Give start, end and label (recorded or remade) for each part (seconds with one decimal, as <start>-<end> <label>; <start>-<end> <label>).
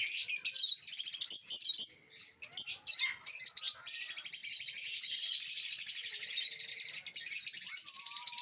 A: 0.0-8.4 recorded